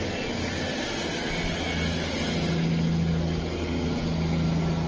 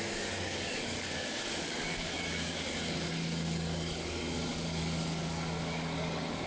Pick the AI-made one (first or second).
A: second